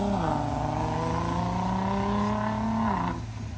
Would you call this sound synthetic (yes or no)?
no